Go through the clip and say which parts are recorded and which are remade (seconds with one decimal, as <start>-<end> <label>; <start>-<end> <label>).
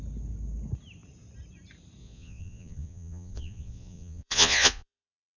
0.0-2.0 recorded; 2.0-5.4 remade